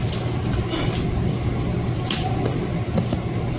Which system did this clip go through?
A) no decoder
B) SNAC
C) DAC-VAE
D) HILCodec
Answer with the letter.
A